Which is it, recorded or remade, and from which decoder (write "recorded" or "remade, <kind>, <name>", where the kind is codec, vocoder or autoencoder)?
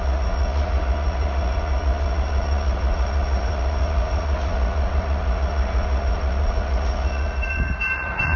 remade, vocoder, Vocos